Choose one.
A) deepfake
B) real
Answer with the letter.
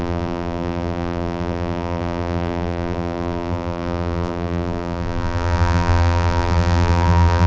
A